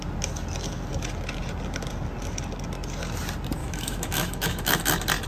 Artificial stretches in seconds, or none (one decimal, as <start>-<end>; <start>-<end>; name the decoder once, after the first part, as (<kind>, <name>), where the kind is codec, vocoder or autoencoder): 3.6-4.8 (autoencoder, DAC-VAE)